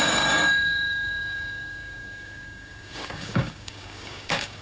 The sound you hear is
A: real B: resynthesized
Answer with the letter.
B